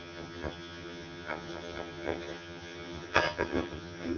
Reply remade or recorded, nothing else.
remade